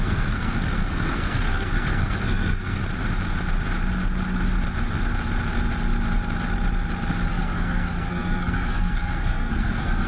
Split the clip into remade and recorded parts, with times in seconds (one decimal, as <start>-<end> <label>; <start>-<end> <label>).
0.0-2.8 remade; 2.8-7.3 recorded; 7.3-10.1 remade